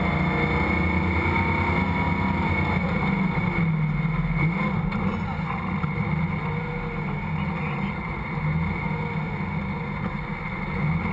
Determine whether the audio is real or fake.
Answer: real